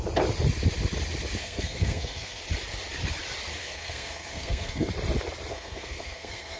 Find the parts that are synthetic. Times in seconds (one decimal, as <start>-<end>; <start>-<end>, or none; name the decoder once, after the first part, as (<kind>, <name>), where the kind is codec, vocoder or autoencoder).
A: 1.4-2.4 (codec, SNAC); 3.6-4.9; 5.5-6.6